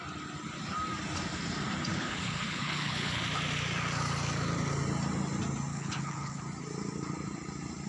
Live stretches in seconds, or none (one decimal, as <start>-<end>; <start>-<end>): 0.0-1.9; 3.2-5.7; 6.4-7.9